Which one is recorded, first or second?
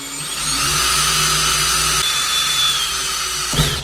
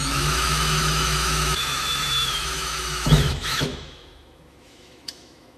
first